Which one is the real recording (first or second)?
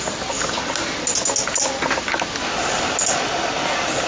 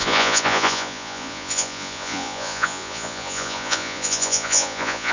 first